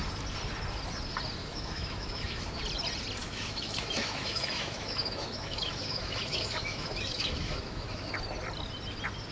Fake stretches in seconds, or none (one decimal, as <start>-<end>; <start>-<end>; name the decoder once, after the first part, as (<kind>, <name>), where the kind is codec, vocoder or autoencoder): 1.4-2.6 (autoencoder, DAC-VAE); 3.2-8.1